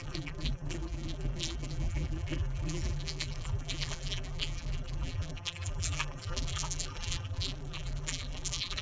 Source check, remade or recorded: remade